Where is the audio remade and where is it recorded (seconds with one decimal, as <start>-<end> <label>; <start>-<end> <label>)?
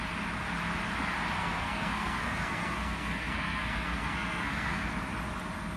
0.0-1.4 recorded; 1.4-4.9 remade; 4.9-5.8 recorded